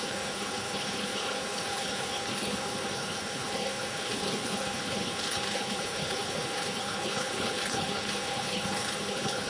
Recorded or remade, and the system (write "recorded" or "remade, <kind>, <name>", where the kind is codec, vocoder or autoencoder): remade, codec, HILCodec